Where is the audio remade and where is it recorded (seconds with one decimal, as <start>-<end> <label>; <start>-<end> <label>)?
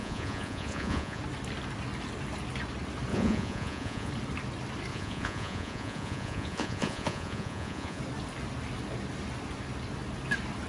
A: 0.0-1.2 remade; 1.2-3.1 recorded; 3.1-4.1 remade; 4.1-4.9 recorded; 4.9-8.0 remade; 8.0-10.7 recorded